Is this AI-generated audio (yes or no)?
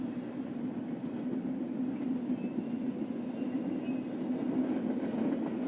no